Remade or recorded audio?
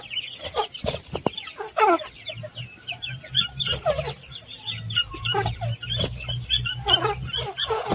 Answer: remade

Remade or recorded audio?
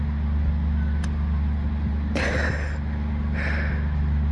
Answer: recorded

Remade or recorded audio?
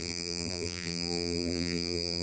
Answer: remade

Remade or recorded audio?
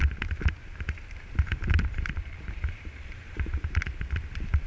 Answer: remade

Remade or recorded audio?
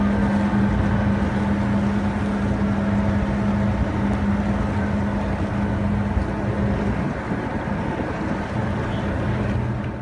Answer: recorded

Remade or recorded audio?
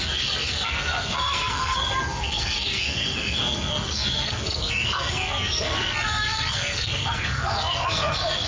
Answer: remade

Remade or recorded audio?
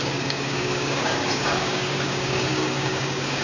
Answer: remade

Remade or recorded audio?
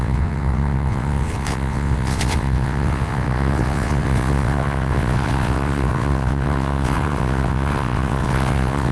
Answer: remade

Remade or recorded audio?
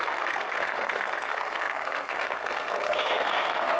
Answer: remade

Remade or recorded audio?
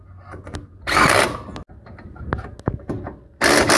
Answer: recorded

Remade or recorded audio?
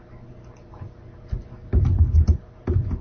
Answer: recorded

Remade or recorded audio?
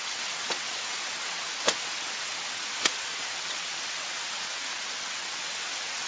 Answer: remade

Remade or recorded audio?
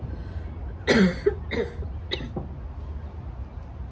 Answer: recorded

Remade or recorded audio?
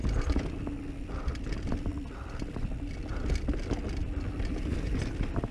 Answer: recorded